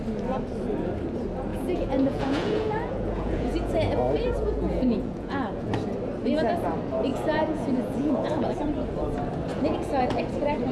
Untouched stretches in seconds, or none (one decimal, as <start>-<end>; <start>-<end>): 0.0-1.5; 5.7-7.1; 8.6-9.5; 10.2-10.7